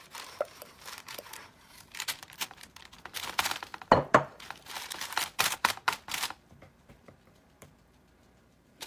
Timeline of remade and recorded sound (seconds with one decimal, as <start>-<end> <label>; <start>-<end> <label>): 0.0-8.9 remade